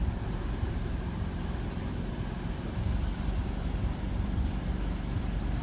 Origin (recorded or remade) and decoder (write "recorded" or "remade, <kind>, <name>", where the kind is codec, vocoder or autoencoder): remade, vocoder, BigVGAN v2